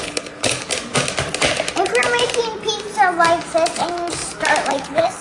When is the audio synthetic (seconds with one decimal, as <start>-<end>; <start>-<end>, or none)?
0.0-0.7; 3.8-4.2; 4.7-5.2